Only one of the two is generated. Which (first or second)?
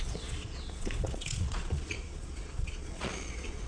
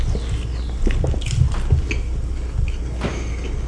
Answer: first